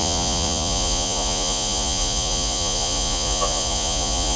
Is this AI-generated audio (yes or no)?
yes